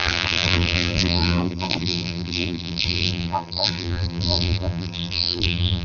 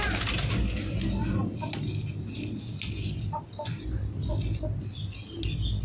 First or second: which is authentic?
second